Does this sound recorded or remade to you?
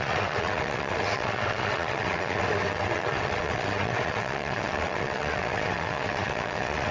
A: remade